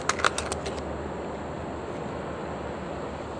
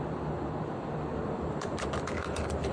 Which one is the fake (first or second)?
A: second